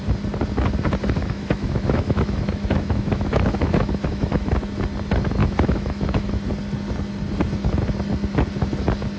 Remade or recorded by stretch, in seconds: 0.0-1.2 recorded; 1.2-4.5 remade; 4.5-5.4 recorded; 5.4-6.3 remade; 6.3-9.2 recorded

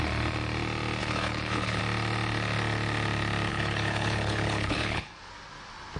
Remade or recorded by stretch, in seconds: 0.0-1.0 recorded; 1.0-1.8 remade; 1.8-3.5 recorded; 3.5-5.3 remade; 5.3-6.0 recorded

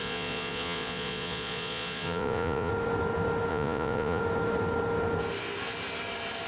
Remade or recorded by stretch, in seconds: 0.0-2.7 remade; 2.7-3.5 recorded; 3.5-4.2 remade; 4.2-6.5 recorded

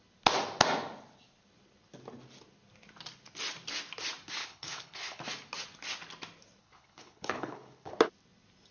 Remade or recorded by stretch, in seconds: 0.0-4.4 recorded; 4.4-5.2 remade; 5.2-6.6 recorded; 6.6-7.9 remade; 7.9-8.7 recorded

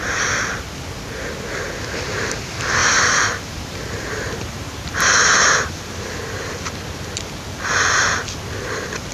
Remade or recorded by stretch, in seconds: 0.0-2.8 recorded; 2.8-6.7 remade; 6.7-9.1 recorded

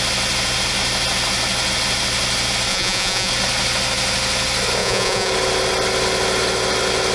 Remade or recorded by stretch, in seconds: 0.0-2.7 recorded; 2.7-3.3 remade; 3.3-4.8 recorded; 4.8-5.3 remade; 5.3-7.1 recorded